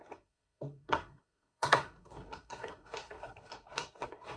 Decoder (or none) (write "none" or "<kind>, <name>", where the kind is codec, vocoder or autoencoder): codec, SNAC